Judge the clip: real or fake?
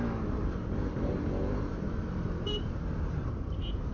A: fake